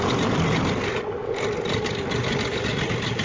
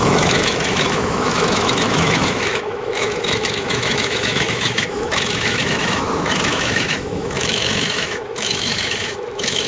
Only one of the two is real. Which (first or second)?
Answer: first